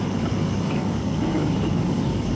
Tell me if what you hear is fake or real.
fake